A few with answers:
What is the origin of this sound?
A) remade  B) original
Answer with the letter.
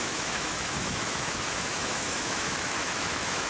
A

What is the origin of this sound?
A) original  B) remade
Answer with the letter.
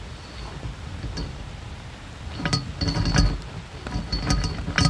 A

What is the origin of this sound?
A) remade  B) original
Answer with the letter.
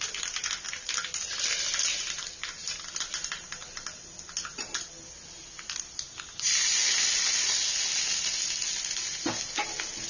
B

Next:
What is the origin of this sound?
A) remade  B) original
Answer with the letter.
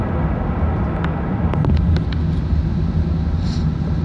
B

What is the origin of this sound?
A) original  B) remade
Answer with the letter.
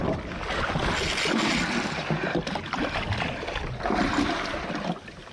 A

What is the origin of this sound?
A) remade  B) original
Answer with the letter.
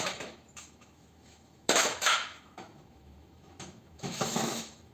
A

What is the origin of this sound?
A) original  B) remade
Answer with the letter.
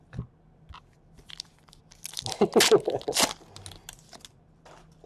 A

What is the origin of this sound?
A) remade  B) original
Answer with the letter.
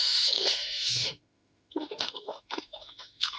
A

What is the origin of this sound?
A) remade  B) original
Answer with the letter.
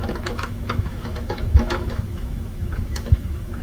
A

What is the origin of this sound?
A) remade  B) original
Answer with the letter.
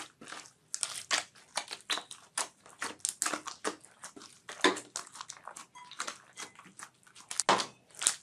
B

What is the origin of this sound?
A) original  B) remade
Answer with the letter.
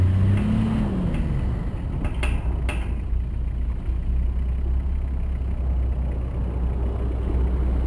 A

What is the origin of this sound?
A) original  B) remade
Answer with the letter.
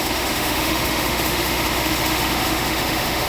B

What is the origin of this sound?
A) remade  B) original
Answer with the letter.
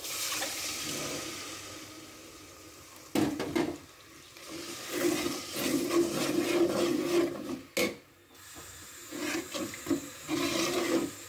B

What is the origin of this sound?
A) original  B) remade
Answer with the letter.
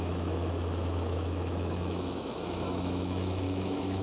B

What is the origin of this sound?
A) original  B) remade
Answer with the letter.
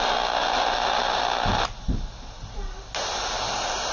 A